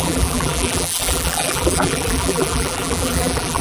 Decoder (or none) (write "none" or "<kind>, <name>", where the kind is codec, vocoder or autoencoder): vocoder, BigVGAN v2